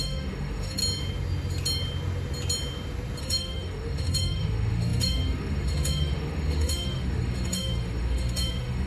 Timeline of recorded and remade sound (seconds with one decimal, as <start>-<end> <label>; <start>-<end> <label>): 0.0-0.8 remade; 0.8-3.2 recorded; 3.2-8.9 remade